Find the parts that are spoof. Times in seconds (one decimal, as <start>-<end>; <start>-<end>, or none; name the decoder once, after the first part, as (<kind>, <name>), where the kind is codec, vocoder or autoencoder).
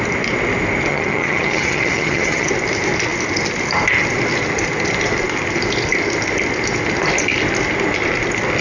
0.9-2.5 (vocoder, HiFi-GAN)